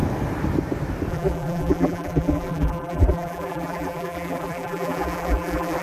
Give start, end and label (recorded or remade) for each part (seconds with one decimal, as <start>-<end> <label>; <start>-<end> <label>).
0.0-1.1 recorded; 1.1-5.8 remade